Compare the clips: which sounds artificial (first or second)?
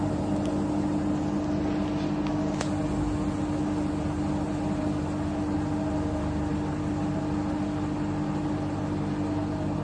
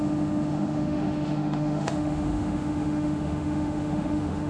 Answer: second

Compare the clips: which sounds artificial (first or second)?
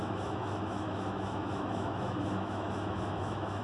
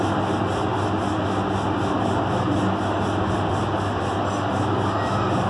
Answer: first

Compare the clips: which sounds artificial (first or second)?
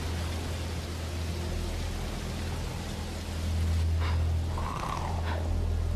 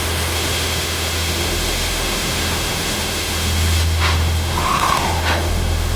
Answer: second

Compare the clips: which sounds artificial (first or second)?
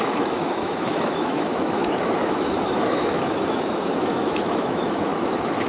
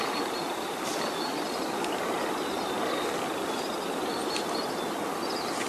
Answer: first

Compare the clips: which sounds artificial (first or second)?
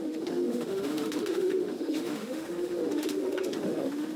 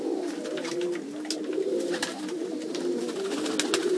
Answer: first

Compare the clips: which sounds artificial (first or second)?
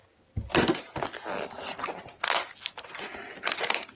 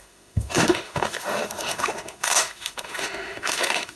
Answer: second